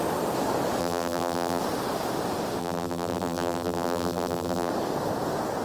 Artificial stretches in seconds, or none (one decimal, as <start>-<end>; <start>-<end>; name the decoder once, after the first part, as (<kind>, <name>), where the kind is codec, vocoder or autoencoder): 0.8-1.6 (vocoder, BigVGAN v2); 2.6-4.7